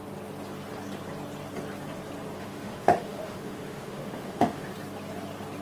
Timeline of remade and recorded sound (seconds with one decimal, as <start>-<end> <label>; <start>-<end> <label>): 0.0-2.4 recorded; 2.4-4.7 remade; 4.7-5.6 recorded